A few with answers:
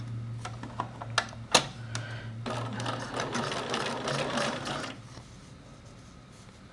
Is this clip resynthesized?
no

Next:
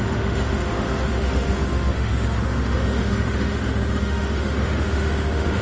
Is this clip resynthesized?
yes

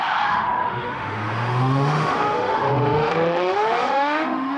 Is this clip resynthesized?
yes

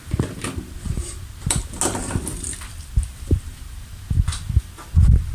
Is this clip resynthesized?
no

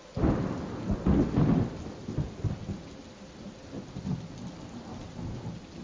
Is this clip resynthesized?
no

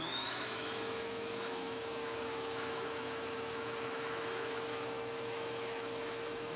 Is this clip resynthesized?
yes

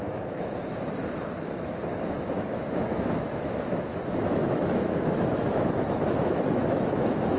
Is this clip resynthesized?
yes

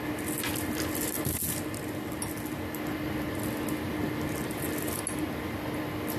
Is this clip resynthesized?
no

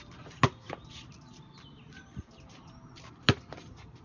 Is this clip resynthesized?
no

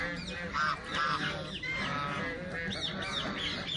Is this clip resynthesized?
no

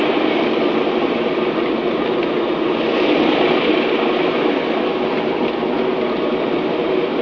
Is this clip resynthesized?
no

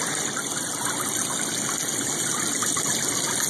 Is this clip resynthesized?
no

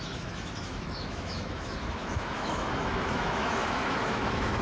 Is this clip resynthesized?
yes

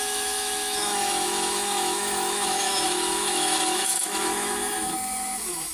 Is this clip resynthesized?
yes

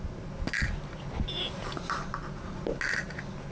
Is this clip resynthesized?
no